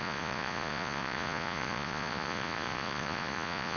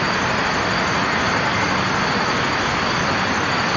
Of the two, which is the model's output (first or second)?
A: first